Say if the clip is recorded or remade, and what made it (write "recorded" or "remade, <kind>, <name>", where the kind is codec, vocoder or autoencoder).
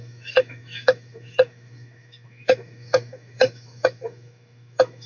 remade, autoencoder, DAC-VAE